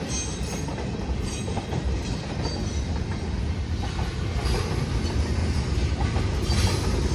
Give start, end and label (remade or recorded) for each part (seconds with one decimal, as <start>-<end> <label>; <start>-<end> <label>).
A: 0.0-0.7 recorded; 0.7-5.0 remade; 5.0-5.4 recorded; 5.4-6.2 remade; 6.2-7.1 recorded